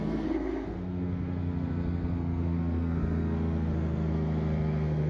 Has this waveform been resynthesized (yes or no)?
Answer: yes